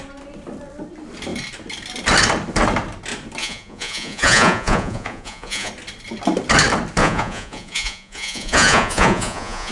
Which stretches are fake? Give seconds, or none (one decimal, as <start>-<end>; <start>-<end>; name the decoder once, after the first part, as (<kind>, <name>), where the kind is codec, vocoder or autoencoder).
3.4-5.7 (vocoder, Vocos); 7.0-9.7